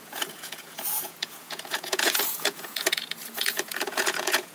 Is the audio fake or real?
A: fake